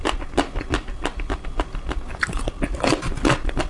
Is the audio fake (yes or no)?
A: no